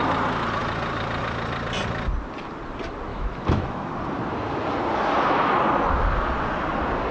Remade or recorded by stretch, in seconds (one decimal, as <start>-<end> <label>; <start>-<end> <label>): 0.0-3.1 recorded; 3.1-3.9 remade; 3.9-7.1 recorded